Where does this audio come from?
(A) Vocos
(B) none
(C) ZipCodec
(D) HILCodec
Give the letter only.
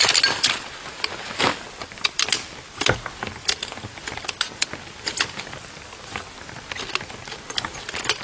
B